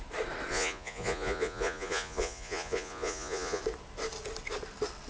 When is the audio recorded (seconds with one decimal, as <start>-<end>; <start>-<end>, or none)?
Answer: 0.0-0.5; 3.6-5.1

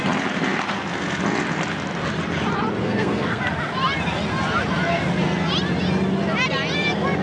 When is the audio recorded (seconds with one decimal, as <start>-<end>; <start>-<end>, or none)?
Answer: 0.0-2.8; 3.4-7.2